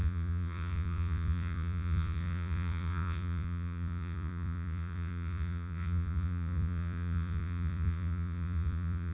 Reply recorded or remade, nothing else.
remade